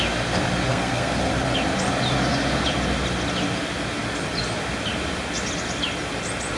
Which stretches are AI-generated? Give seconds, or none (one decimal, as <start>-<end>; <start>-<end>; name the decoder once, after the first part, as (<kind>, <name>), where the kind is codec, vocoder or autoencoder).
0.7-1.3 (codec, SNAC)